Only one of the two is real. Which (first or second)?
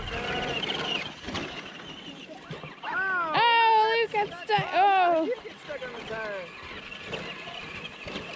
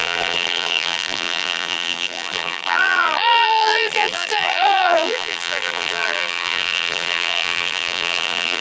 first